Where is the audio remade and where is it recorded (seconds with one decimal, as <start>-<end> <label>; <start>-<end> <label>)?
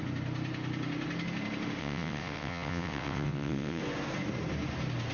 0.0-1.8 recorded; 1.8-3.8 remade; 3.8-5.1 recorded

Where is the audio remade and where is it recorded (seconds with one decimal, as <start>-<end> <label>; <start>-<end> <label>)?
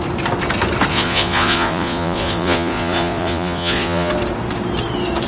0.0-0.9 recorded; 0.9-4.1 remade; 4.1-5.3 recorded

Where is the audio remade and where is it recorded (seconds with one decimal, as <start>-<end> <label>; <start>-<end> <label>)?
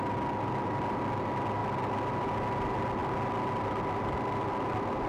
0.0-5.1 recorded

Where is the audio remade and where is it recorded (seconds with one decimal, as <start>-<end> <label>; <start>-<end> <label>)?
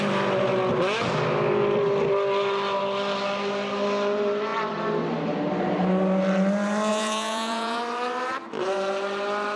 0.0-6.9 recorded; 6.9-7.8 remade; 7.8-9.6 recorded